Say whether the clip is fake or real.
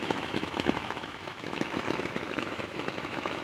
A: fake